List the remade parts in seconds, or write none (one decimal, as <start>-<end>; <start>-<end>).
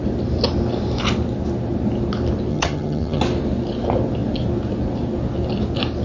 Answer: 2.5-3.2